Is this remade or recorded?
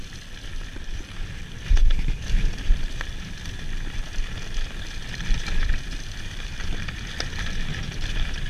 recorded